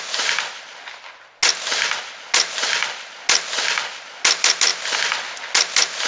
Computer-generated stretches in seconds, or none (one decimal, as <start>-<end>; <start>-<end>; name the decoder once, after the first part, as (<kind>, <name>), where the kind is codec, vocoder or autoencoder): none